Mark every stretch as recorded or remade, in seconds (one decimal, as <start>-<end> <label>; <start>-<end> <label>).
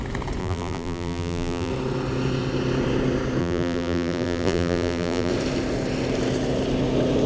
0.0-0.4 recorded; 0.4-1.7 remade; 1.7-3.4 recorded; 3.4-5.3 remade; 5.3-7.3 recorded